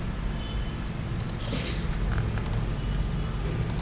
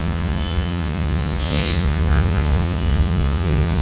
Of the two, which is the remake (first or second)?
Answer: second